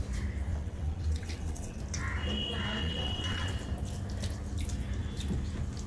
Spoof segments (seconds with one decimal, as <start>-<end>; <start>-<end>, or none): 0.5-1.8; 2.8-3.5